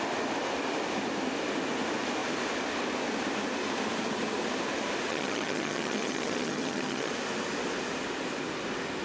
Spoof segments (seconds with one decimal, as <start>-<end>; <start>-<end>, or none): 5.1-7.1